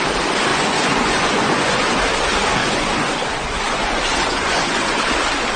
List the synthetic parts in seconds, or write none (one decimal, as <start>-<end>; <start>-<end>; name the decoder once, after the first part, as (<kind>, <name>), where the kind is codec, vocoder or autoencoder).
0.5-1.9 (vocoder, Vocos); 2.6-5.0